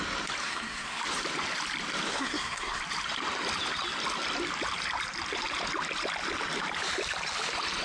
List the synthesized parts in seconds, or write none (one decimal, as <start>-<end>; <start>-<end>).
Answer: 0.4-1.0; 2.1-2.8